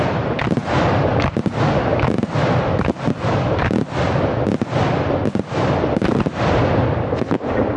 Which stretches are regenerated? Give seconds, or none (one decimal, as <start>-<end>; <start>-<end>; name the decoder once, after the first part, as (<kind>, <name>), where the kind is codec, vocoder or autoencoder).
none